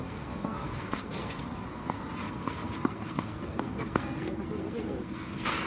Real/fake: fake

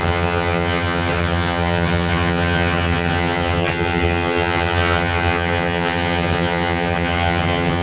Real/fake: fake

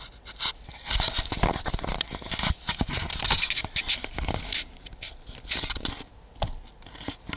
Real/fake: real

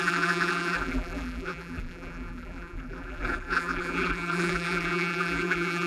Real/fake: fake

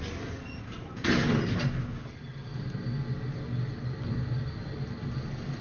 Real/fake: real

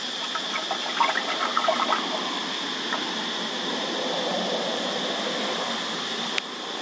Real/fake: real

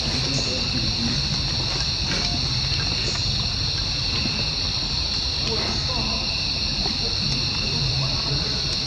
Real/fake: real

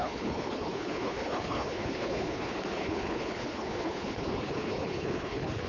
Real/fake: fake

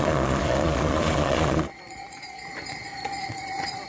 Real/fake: fake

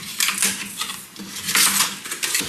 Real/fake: real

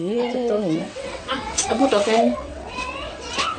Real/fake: fake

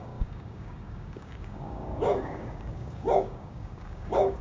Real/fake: fake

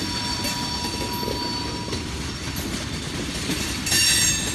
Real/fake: real